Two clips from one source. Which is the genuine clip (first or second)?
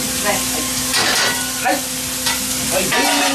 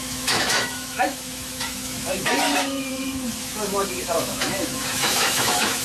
first